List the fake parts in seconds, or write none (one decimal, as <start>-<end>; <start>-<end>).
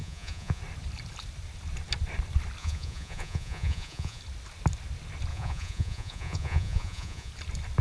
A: 0.0-0.6; 2.6-4.2; 5.3-7.3